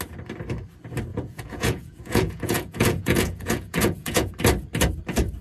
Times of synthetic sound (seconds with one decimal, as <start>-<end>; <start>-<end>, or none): 1.1-4.3